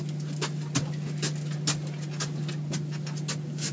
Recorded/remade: recorded